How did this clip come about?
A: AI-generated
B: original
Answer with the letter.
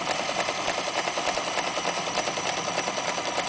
B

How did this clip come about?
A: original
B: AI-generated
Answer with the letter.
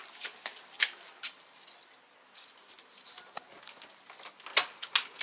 A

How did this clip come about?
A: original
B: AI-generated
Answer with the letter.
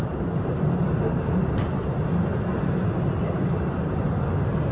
B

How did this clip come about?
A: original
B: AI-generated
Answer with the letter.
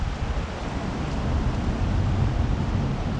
A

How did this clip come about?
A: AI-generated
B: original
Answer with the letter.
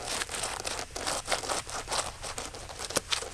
B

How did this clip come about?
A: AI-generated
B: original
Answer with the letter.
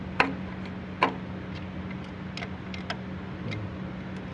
B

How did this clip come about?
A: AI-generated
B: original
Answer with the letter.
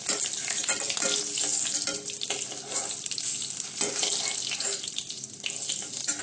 B